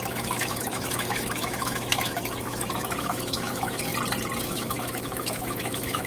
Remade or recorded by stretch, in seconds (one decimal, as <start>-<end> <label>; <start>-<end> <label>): 0.0-3.9 remade; 3.9-4.4 recorded; 4.4-6.1 remade